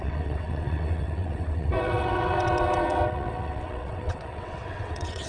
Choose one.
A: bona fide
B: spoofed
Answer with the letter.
B